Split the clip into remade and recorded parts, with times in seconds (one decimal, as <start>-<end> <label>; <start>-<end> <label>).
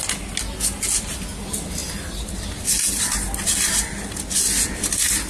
0.0-5.3 recorded